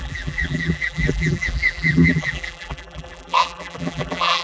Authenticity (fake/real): fake